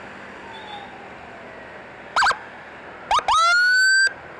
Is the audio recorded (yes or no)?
yes